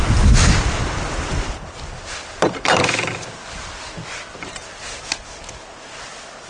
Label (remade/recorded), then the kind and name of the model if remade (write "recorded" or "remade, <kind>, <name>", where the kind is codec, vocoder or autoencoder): recorded